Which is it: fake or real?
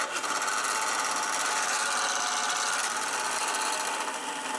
real